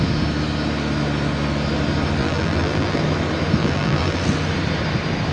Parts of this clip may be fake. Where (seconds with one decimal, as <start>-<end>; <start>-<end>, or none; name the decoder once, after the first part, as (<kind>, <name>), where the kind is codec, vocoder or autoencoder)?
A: 2.2-3.0 (vocoder, BigVGAN v2); 3.6-4.2